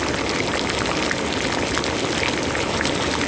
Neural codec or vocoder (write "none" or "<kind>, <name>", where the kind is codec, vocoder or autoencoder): none